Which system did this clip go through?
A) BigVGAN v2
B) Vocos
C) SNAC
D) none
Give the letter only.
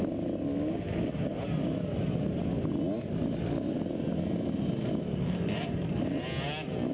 D